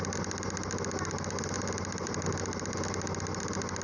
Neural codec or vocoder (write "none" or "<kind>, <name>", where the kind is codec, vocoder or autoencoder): none